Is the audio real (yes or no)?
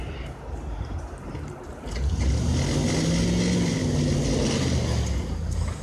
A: yes